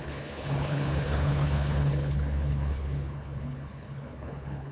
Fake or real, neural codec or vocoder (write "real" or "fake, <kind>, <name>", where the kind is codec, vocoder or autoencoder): fake, codec, HILCodec